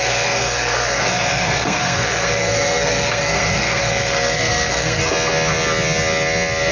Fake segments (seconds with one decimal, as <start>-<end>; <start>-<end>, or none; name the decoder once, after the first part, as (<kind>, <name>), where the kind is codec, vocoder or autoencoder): 0.0-5.0 (codec, SNAC)